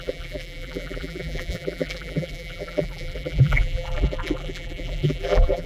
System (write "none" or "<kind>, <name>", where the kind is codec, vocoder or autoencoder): vocoder, BigVGAN v2